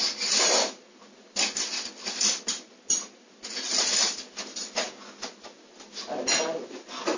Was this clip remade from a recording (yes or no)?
no